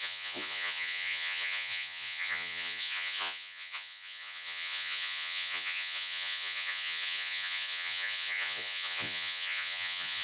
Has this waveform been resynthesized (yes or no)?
yes